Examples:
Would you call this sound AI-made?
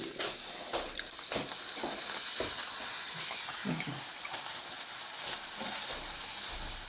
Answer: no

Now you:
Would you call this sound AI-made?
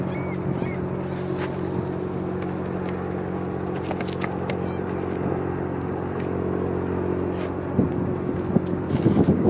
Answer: no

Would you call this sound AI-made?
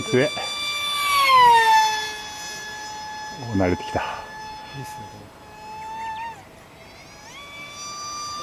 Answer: no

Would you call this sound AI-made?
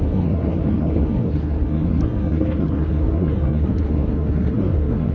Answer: yes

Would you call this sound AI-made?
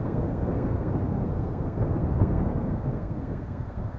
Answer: yes